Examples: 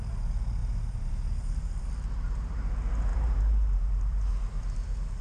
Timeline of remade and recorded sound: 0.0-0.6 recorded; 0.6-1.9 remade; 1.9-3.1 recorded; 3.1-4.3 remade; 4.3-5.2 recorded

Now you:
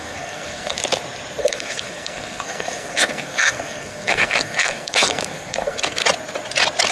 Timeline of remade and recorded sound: 0.0-0.8 remade; 0.8-1.4 recorded; 1.4-6.0 remade; 6.0-6.9 recorded

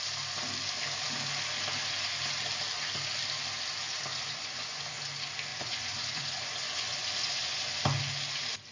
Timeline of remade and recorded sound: 0.0-4.1 recorded; 4.1-5.0 remade; 5.0-5.5 recorded; 5.5-7.8 remade; 7.8-8.7 recorded

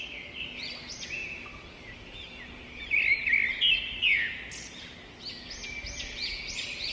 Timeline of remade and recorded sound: 0.0-6.9 recorded